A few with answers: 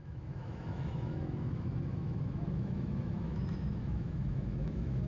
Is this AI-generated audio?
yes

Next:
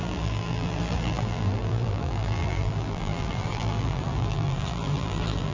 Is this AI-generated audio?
yes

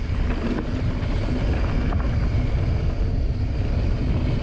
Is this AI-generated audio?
no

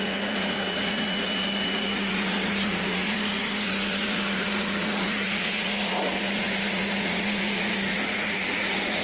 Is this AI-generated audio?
yes